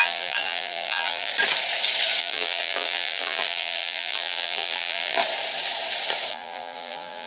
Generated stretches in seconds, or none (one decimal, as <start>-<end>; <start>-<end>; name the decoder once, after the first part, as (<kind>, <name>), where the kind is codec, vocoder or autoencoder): 0.0-1.3 (vocoder, BigVGAN v2); 2.2-5.2; 6.3-7.3